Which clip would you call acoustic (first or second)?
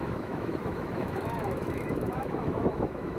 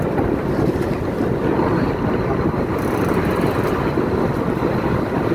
second